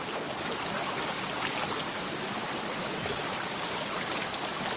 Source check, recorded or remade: recorded